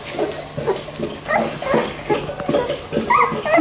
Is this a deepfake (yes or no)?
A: no